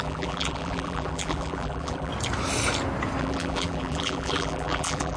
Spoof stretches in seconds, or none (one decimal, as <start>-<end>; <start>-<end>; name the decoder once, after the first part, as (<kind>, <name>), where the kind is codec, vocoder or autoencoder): 0.0-2.1 (vocoder, BigVGAN v2); 3.2-5.2